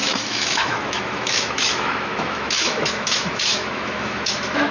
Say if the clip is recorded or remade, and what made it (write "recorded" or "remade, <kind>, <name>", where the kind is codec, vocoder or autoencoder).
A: remade, autoencoder, DAC-VAE